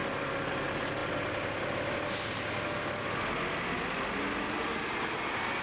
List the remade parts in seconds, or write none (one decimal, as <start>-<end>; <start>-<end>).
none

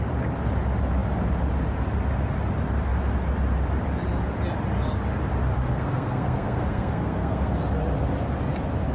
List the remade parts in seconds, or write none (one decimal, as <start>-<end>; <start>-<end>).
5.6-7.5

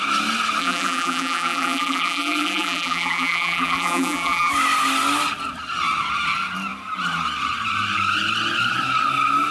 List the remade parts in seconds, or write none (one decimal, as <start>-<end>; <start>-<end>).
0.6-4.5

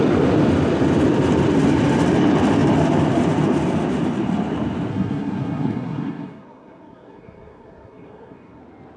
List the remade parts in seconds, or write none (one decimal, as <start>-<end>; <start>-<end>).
4.9-8.6

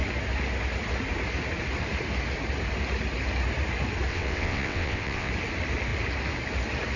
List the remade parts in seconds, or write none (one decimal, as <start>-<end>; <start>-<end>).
4.1-5.3

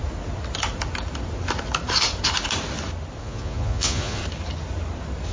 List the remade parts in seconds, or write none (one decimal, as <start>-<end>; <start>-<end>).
3.2-4.2